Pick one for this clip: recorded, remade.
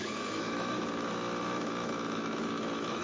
remade